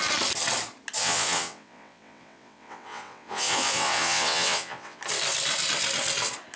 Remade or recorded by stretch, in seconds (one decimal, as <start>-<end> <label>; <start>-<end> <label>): 0.0-1.0 recorded; 1.0-5.0 remade; 5.0-6.6 recorded